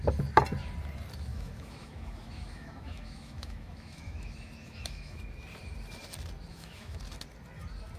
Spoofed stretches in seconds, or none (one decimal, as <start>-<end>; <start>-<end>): 1.3-5.2; 6.5-7.0